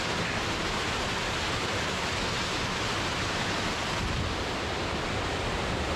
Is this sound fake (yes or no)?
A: no